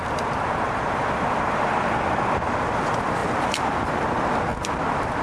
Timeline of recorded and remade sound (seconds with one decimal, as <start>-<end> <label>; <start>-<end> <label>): 0.0-5.2 recorded